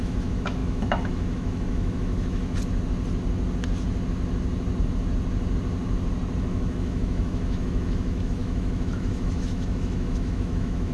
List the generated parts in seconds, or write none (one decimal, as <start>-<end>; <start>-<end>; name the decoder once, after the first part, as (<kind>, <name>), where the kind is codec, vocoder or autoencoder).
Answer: 0.0-2.4 (autoencoder, DAC-VAE); 6.4-10.9